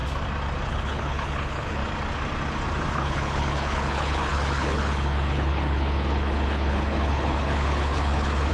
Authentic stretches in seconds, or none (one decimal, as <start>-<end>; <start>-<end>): 0.0-0.7; 1.8-2.9